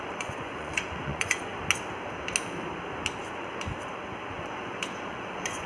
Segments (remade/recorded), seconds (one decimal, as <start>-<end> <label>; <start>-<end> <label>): 0.0-1.5 remade; 1.5-3.2 recorded; 3.2-3.7 remade; 3.7-4.3 recorded; 4.3-5.7 remade